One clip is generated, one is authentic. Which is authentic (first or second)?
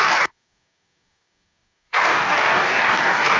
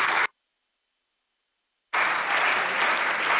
second